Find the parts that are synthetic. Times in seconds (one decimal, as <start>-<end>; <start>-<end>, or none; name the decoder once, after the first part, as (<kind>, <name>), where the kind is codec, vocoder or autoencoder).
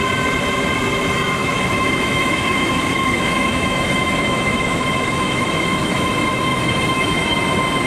1.4-6.1 (autoencoder, DAC-VAE); 6.5-7.4